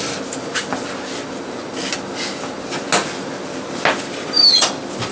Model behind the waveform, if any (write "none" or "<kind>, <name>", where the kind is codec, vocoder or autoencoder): none